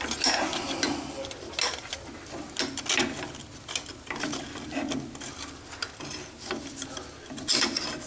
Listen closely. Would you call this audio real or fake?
real